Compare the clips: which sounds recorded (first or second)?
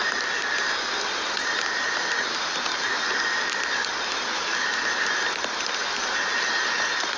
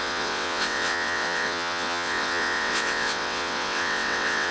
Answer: first